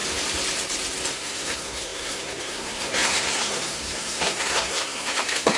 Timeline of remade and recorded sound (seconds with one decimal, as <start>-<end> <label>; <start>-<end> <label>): 0.0-1.1 recorded; 1.1-5.6 remade